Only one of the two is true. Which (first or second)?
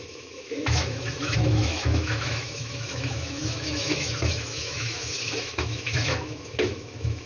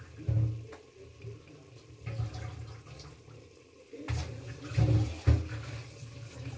second